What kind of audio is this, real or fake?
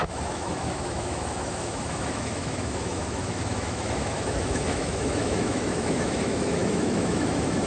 fake